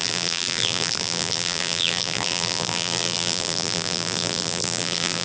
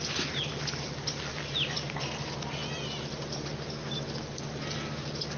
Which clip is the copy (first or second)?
first